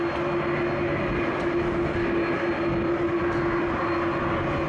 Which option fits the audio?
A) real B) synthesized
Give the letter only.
A